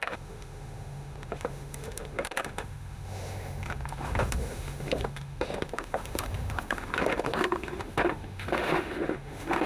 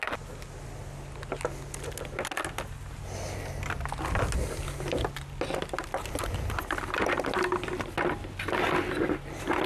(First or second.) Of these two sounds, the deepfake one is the first